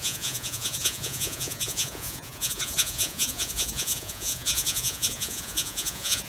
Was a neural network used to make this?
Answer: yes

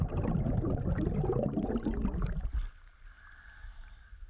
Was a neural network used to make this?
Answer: no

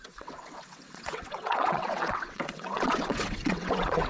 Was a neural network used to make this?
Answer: yes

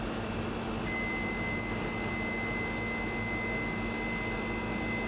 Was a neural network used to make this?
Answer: no